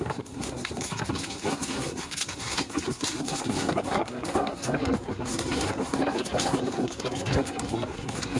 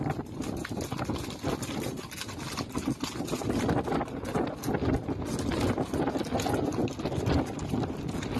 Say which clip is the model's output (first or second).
first